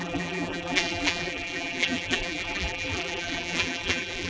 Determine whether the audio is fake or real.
fake